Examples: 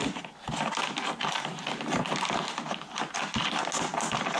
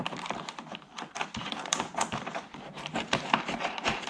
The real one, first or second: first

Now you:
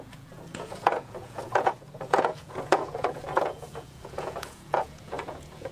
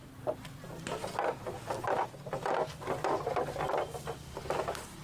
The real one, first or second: second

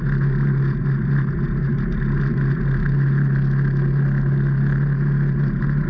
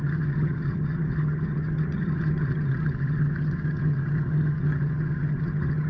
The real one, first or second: first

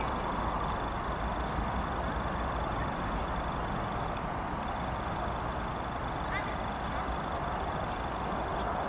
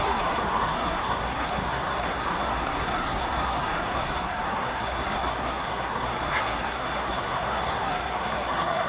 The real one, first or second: first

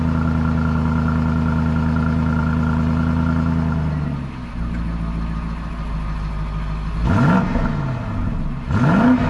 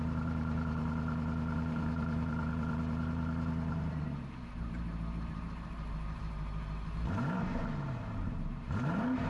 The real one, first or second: first